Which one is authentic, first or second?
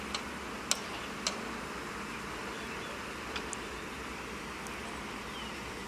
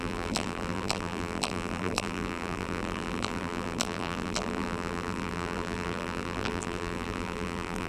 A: first